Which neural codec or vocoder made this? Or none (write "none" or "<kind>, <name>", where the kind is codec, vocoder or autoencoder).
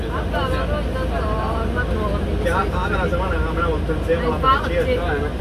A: none